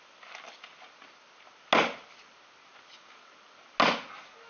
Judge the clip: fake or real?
real